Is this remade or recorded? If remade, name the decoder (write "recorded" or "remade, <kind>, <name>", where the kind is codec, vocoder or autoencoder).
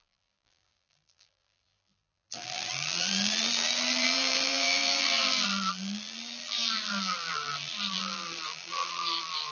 remade, vocoder, BigVGAN v2